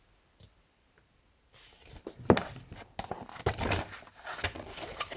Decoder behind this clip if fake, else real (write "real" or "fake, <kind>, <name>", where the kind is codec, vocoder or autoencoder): real